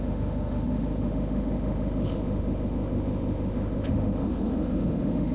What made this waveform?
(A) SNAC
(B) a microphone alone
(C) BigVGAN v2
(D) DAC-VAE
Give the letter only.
D